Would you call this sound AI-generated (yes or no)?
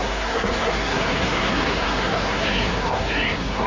yes